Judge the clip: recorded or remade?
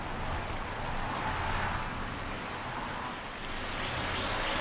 recorded